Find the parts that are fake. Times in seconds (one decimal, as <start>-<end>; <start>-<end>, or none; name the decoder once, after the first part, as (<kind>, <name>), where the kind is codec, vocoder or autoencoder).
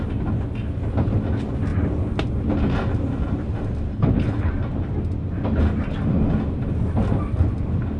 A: 3.9-4.5 (codec, HILCodec)